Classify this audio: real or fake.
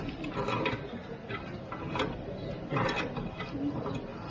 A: real